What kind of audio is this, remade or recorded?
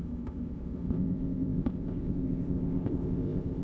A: remade